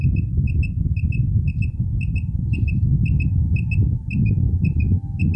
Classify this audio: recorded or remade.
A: recorded